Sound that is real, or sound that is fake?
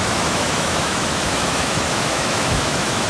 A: fake